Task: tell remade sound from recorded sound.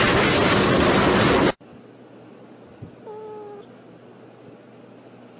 recorded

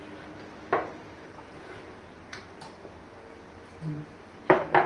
recorded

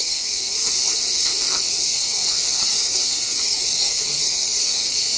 remade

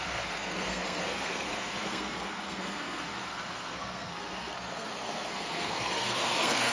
remade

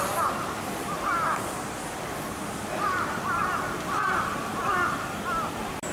recorded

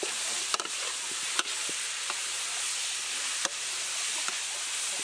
recorded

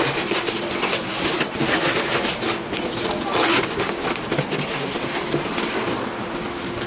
recorded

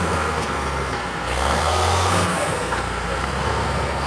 remade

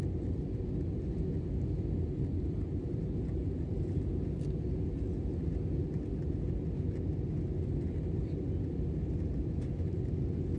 recorded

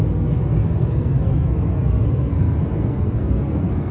remade